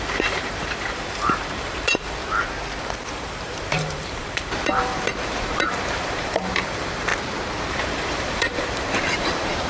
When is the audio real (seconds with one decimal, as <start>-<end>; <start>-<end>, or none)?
2.2-3.1; 7.1-7.7